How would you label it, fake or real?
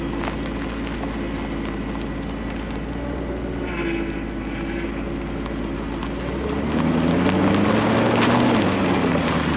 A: real